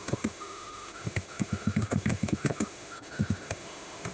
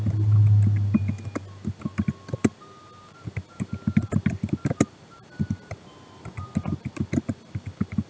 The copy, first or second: first